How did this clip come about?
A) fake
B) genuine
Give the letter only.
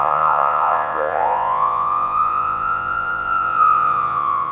A